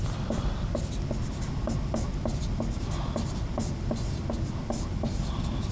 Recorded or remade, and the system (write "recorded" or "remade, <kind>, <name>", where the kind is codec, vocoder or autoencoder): recorded